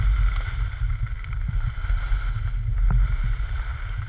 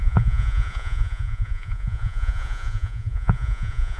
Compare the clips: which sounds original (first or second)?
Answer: first